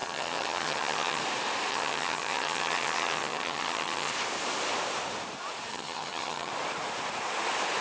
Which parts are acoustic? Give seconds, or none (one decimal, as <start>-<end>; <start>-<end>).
1.2-1.7; 4.1-5.7; 6.5-7.8